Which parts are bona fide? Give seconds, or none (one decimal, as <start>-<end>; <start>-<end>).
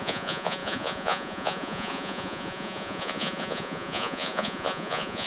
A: none